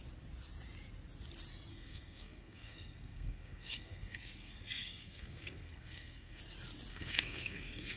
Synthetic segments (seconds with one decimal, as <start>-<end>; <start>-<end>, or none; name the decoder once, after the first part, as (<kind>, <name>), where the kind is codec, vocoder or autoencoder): 1.7-6.4 (codec, SNAC); 6.9-8.0

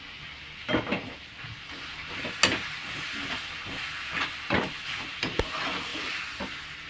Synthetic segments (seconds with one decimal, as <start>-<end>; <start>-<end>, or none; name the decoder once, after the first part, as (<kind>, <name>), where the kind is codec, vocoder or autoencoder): none